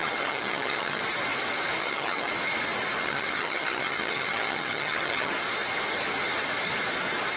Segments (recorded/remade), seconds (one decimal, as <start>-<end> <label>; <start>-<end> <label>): 0.0-1.0 remade; 1.0-1.8 recorded; 1.8-2.3 remade; 2.3-3.0 recorded; 3.0-5.3 remade; 5.3-7.4 recorded